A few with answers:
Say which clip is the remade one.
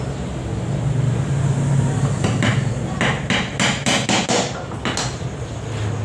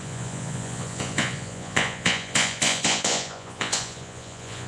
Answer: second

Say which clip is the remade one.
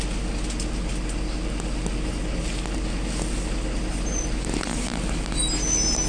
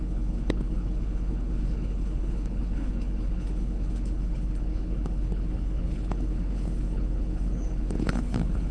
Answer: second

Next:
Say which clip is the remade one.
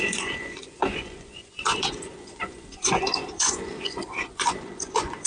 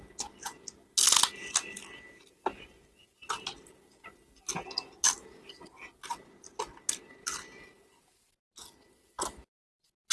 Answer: first